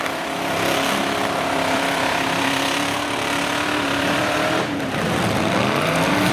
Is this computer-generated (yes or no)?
yes